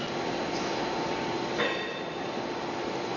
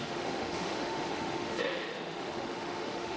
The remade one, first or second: second